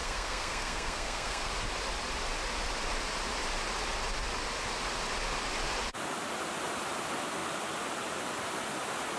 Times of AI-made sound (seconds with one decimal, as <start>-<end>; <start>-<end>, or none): 0.0-1.5